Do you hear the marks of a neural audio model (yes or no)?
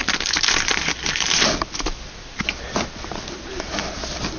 no